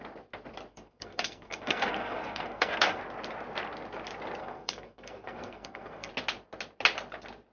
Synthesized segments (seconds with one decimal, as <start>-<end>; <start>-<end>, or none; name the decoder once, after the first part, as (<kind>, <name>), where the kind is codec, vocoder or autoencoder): 0.7-3.0 (codec, SNAC); 4.4-6.1